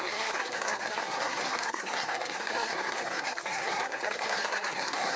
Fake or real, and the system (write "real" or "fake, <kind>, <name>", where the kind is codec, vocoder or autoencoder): fake, codec, SNAC